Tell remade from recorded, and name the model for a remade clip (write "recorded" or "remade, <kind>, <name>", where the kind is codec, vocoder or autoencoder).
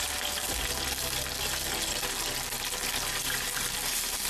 recorded